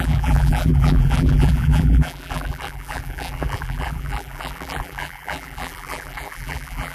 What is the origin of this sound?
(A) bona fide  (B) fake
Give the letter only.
B